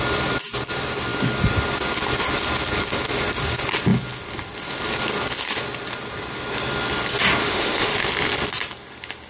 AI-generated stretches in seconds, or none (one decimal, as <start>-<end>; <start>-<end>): 7.4-8.1